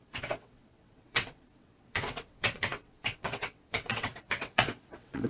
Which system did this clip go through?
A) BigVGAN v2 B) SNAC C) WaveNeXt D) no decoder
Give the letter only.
C